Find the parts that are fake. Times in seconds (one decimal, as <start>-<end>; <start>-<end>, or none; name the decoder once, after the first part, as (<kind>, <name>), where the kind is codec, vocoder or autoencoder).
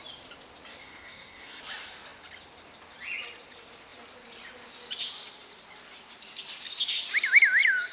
0.8-1.6 (codec, SNAC)